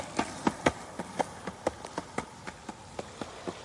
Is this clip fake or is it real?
real